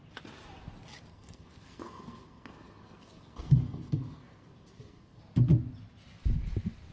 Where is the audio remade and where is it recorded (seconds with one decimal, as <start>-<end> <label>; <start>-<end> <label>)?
0.0-1.1 recorded; 1.1-5.2 remade; 5.2-6.9 recorded